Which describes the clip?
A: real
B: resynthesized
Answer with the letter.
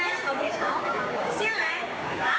B